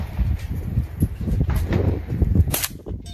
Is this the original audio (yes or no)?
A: no